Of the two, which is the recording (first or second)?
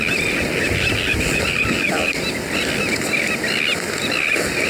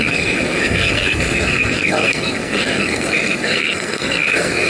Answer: first